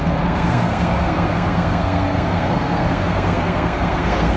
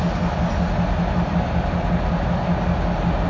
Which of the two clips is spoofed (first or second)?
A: first